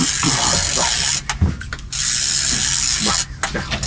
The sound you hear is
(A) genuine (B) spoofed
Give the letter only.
A